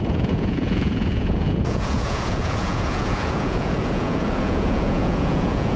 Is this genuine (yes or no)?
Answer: no